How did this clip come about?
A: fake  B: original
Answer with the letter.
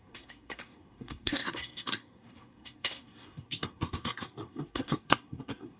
A